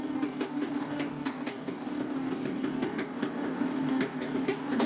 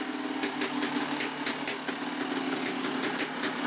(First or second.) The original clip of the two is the second